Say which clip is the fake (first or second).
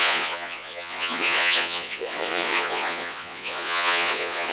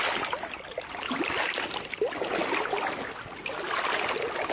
first